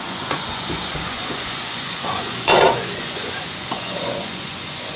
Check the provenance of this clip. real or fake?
fake